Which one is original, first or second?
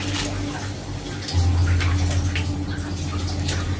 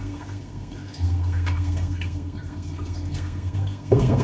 first